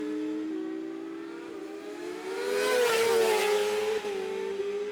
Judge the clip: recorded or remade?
recorded